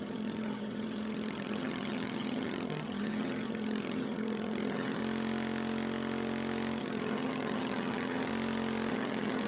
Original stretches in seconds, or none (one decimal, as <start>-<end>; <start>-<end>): 5.0-6.8; 8.3-8.9